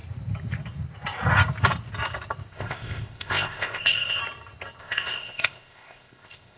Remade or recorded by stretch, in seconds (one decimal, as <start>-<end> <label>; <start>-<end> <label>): 0.0-2.5 recorded; 2.5-4.2 remade; 4.2-4.8 recorded; 4.8-6.6 remade